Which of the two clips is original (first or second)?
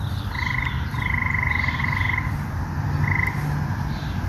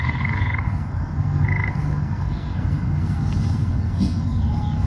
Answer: first